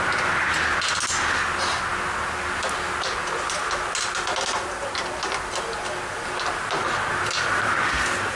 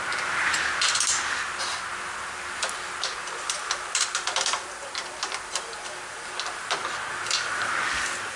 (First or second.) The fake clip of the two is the second